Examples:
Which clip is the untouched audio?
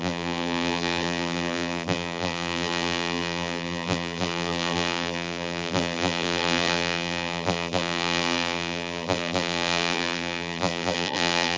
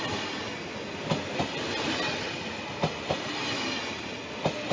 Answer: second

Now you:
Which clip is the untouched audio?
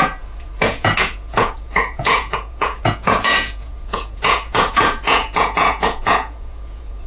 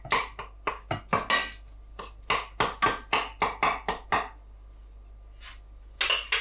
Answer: second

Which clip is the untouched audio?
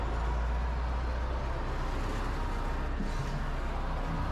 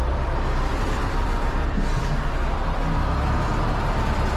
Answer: first